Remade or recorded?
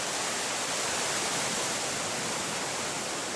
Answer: recorded